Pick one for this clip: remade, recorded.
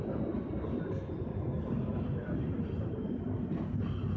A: recorded